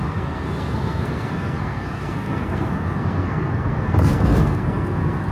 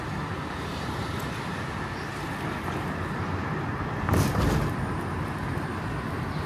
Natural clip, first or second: second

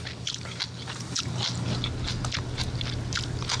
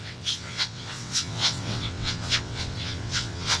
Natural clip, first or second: first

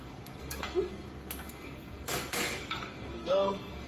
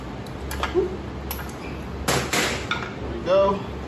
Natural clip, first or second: second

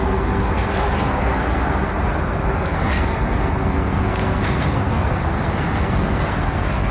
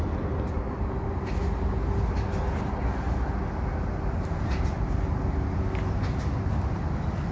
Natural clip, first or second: second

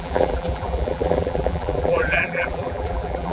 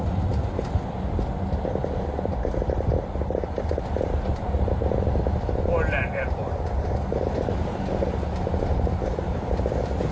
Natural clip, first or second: second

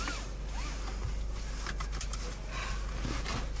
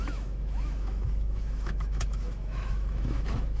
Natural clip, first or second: first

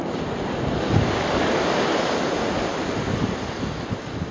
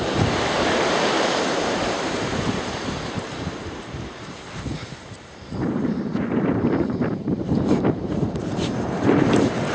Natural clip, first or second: first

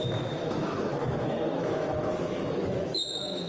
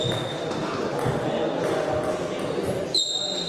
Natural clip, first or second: second